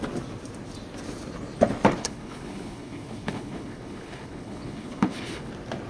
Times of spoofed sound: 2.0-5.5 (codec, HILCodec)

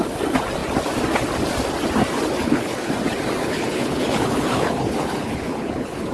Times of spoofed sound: 2.4-2.9 (codec, HILCodec); 3.4-6.1

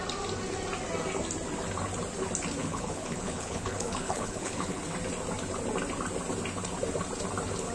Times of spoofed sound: 2.6-4.8 (codec, HILCodec)

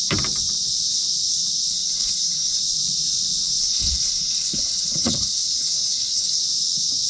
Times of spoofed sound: 1.7-2.6 (codec, HILCodec); 3.6-6.4

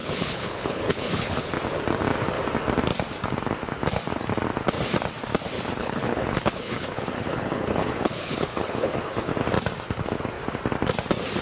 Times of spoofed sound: 0.0-1.5 (codec, HILCodec); 5.8-9.3

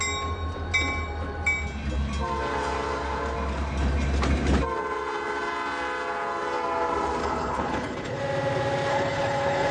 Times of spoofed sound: 7.2-8.2 (codec, HILCodec); 8.9-9.7